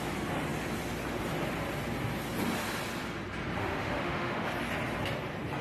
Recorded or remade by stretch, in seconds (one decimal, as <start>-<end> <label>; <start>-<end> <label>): 0.0-3.6 recorded; 3.6-4.5 remade; 4.5-5.6 recorded